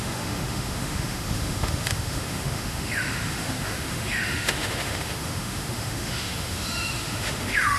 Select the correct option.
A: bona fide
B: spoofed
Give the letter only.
B